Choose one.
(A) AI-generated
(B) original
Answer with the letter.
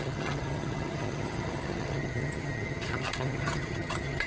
A